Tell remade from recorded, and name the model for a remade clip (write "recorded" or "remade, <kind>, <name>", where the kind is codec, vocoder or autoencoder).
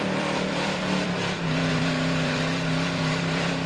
remade, vocoder, BigVGAN v2